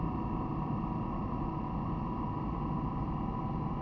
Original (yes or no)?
yes